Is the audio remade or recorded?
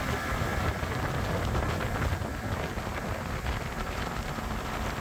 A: recorded